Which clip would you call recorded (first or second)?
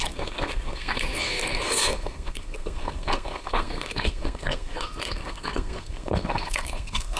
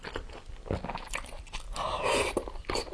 second